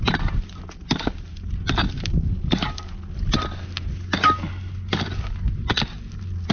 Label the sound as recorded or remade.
recorded